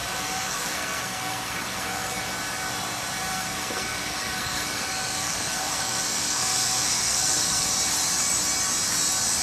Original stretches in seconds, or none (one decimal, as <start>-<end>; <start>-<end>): 2.2-3.3; 7.7-9.4